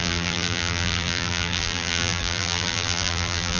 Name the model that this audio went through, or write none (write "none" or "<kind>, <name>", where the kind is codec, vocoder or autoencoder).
vocoder, BigVGAN v2